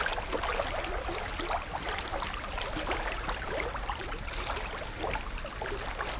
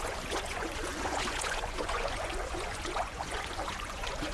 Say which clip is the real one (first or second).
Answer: first